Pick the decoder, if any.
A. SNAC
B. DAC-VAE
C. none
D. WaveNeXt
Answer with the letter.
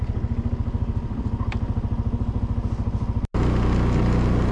C